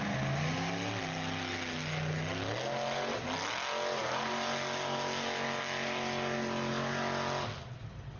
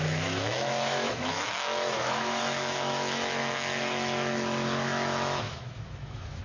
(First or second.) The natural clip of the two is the first